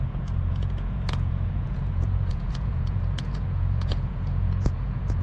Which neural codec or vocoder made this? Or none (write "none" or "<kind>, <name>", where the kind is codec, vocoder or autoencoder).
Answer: vocoder, Vocos